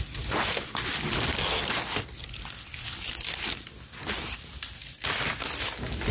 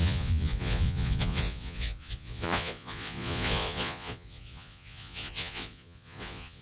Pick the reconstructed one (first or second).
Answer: second